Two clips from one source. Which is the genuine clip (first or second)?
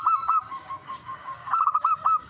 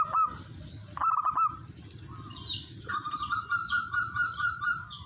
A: second